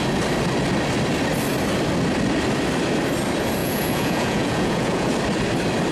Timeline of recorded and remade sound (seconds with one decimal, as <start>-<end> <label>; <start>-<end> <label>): 0.0-3.6 recorded; 3.6-5.1 remade; 5.1-5.9 recorded